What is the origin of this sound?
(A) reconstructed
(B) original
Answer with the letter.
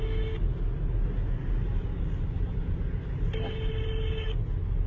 B